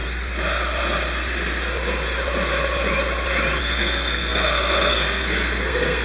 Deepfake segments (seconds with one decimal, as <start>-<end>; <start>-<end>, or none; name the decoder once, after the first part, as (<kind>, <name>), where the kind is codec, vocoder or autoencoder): 3.6-6.0 (codec, SNAC)